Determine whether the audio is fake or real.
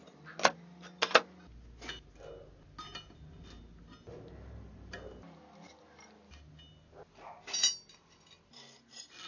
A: real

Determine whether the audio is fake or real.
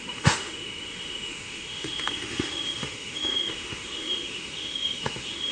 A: fake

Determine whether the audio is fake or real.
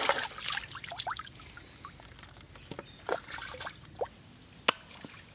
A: real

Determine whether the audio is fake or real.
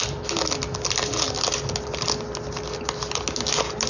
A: real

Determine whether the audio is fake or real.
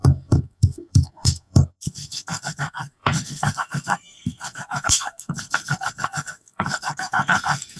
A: fake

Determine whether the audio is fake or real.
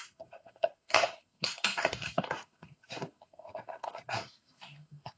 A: fake